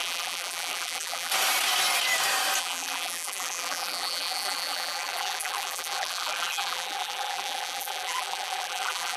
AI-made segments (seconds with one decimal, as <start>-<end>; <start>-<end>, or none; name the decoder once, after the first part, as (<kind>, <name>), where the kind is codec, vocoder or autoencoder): 0.0-1.3 (vocoder, BigVGAN v2); 2.6-9.2